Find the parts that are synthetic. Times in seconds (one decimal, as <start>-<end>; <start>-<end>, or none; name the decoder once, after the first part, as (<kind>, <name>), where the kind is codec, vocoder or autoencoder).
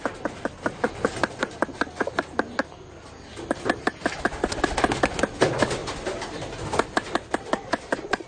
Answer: 5.8-6.5 (vocoder, BigVGAN v2)